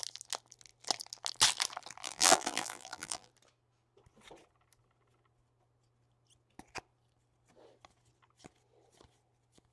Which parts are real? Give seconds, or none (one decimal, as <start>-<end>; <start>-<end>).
0.0-2.0; 3.3-9.7